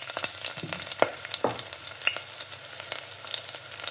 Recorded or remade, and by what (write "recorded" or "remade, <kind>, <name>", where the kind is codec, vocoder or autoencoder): recorded